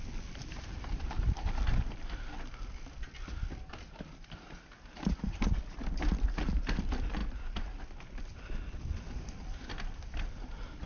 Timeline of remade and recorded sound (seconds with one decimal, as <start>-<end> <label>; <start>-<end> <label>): 0.0-10.9 recorded